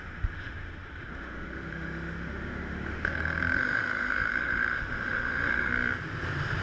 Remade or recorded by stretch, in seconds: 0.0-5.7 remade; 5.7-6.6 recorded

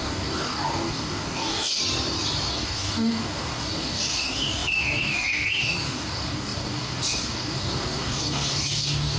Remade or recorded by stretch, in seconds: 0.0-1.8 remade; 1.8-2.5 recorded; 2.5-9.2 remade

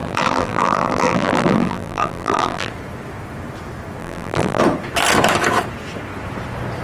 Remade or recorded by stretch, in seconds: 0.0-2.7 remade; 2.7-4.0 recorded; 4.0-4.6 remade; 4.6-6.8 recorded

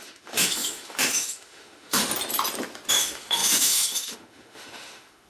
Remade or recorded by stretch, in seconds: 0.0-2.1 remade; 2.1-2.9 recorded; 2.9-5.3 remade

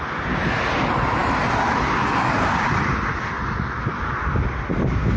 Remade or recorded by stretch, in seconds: 0.0-5.2 recorded

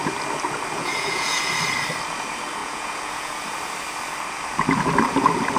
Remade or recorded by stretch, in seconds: 0.0-0.8 recorded; 0.8-1.5 remade; 1.5-2.6 recorded; 2.6-3.5 remade; 3.5-5.6 recorded

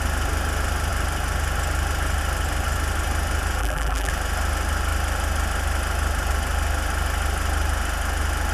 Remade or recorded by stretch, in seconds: 0.0-3.6 recorded; 3.6-4.1 remade; 4.1-8.5 recorded